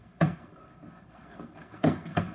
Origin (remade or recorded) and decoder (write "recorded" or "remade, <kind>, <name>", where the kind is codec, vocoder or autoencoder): remade, codec, SNAC